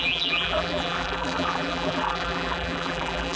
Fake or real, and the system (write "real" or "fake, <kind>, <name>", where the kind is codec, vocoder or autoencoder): fake, vocoder, BigVGAN v2